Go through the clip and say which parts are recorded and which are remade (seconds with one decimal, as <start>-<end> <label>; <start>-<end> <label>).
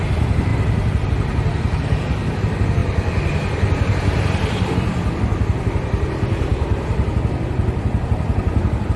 0.0-2.8 recorded; 2.8-4.7 remade; 4.7-9.0 recorded